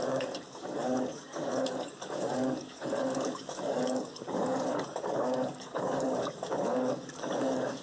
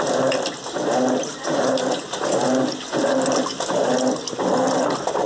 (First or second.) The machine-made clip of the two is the first